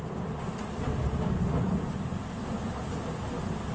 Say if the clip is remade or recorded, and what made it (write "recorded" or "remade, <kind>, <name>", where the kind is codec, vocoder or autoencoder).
recorded